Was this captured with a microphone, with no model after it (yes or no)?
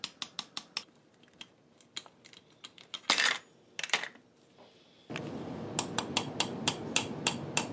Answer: yes